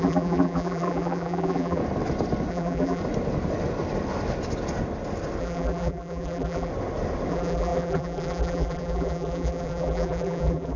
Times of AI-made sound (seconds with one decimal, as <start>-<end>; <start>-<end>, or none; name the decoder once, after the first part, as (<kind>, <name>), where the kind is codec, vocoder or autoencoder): 0.0-1.8 (vocoder, BigVGAN v2); 2.5-3.0; 5.4-6.7; 7.3-10.8